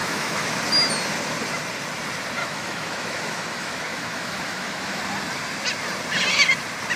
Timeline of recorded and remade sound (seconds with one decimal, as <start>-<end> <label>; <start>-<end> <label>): 0.0-0.5 remade; 0.5-2.4 recorded; 2.4-5.0 remade; 5.0-7.0 recorded